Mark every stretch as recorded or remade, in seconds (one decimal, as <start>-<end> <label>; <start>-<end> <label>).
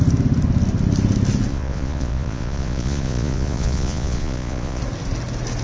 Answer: 0.0-1.5 recorded; 1.5-4.8 remade; 4.8-5.6 recorded